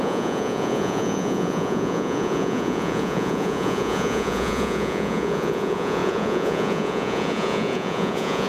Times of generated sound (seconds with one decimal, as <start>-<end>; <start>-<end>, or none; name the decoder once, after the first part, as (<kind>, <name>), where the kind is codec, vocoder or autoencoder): 0.0-8.5 (vocoder, Vocos)